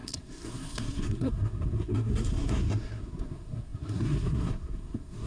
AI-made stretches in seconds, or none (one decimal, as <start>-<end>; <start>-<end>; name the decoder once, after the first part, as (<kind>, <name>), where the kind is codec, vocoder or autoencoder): 0.0-5.3 (codec, SNAC)